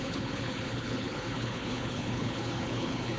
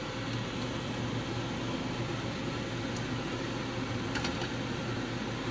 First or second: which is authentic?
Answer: second